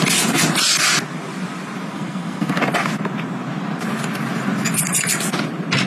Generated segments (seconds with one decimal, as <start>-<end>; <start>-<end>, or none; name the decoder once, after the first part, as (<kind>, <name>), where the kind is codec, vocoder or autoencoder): 1.9-2.6 (codec, SNAC)